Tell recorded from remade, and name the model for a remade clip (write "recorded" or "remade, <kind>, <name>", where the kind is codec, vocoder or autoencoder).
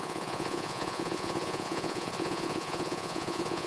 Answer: remade, vocoder, Vocos